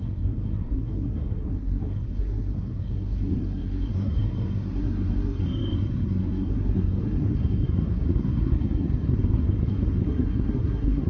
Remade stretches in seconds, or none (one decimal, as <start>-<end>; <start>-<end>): 0.0-11.1

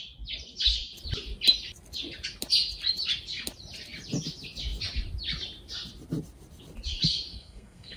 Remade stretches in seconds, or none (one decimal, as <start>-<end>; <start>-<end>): 7.3-8.0

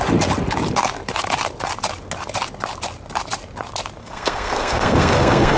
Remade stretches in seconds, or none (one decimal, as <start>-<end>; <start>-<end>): 4.0-5.6

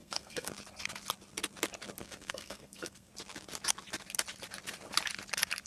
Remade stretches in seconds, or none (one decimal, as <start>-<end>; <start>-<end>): 0.0-0.5; 2.0-3.1

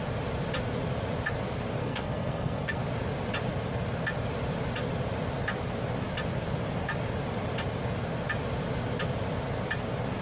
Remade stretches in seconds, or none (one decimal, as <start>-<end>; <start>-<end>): 1.8-2.8

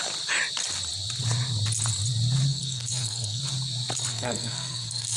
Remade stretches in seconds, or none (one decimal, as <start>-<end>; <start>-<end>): 2.5-3.4; 4.1-5.2

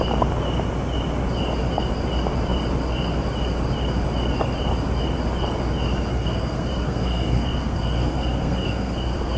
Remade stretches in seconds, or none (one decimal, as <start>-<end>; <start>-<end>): 6.1-9.4